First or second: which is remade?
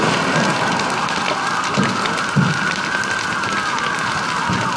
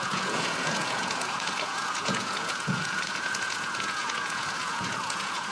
second